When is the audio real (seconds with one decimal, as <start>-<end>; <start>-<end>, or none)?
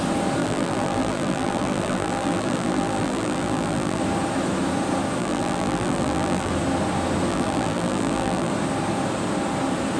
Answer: 0.0-0.4; 4.0-5.2; 6.5-7.3; 8.5-10.0